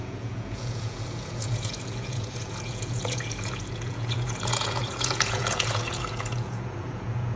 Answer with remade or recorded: remade